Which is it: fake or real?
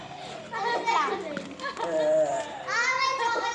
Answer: real